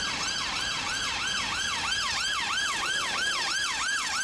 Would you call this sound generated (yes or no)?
yes